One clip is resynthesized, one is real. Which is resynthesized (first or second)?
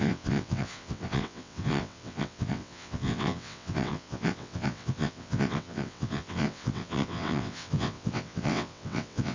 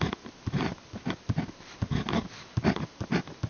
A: first